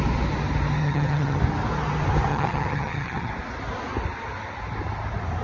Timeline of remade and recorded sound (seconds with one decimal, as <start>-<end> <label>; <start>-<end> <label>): 0.0-0.8 recorded; 0.8-1.4 remade; 1.4-2.3 recorded; 2.3-3.3 remade; 3.3-5.4 recorded